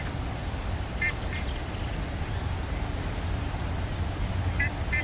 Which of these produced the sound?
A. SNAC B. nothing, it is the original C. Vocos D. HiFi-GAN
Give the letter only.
B